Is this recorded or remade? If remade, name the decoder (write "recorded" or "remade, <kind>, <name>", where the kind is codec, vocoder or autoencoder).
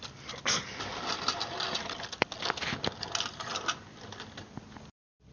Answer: recorded